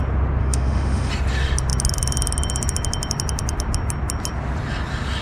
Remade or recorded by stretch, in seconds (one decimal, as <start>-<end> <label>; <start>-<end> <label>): 0.0-0.4 recorded; 0.4-1.1 remade; 1.1-5.2 recorded